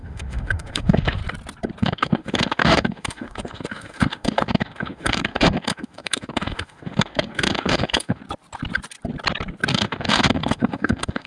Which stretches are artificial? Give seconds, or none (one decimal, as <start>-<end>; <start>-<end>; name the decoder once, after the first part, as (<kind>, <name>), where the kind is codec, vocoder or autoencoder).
0.0-1.2 (autoencoder, DAC-VAE); 1.8-8.2; 9.7-11.3